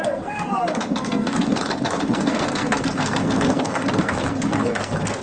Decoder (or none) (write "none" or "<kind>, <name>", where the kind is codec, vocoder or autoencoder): codec, SNAC